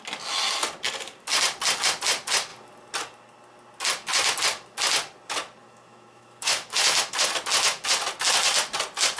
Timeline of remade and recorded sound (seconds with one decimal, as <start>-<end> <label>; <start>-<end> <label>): 0.0-5.6 recorded; 5.6-7.0 remade; 7.0-9.2 recorded